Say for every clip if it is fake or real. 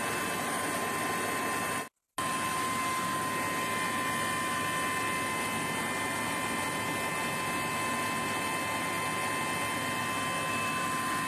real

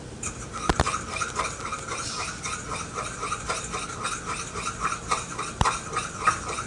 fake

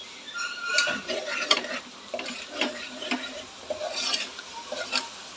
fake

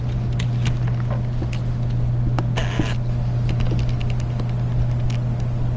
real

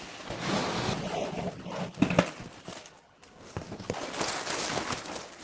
fake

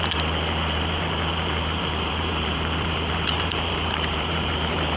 fake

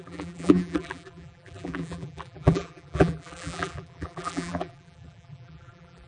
fake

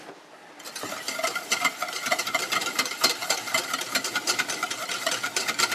fake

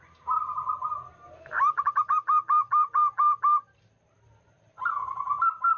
fake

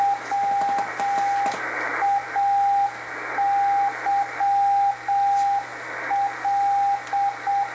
real